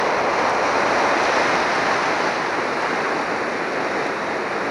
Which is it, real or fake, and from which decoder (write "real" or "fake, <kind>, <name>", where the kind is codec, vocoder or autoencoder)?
real